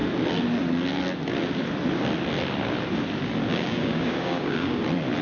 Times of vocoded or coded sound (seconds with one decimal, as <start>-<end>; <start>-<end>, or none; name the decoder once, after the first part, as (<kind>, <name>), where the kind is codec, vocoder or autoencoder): 3.5-4.8 (codec, DAC)